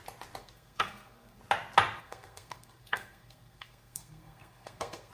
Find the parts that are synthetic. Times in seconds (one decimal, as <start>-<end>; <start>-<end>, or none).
0.4-1.4; 2.0-5.1